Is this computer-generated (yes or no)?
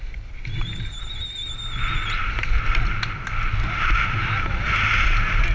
no